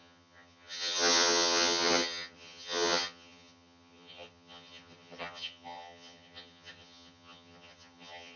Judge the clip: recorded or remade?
remade